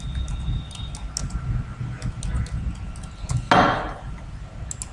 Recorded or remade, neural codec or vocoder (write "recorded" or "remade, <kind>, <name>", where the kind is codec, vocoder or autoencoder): recorded